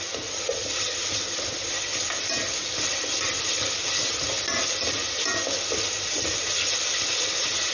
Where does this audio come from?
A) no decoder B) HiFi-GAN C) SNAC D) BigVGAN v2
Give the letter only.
A